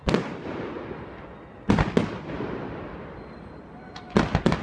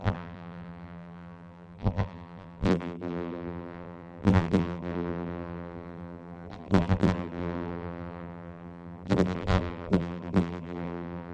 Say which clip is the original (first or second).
first